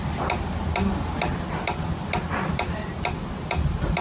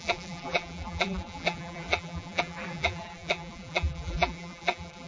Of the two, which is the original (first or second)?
first